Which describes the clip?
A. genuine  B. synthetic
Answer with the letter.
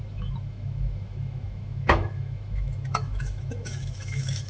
B